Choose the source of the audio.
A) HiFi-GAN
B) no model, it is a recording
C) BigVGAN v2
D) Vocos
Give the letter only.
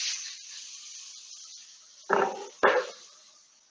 B